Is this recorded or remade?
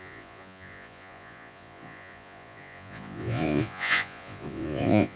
remade